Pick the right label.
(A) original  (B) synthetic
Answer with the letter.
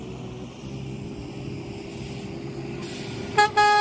A